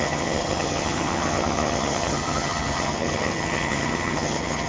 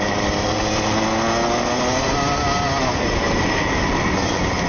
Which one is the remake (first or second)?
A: first